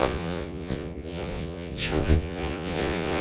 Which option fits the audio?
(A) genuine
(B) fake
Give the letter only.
B